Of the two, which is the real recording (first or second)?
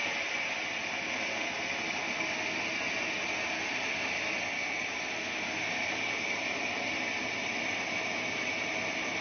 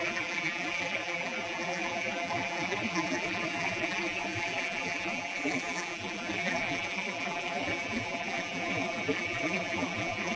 first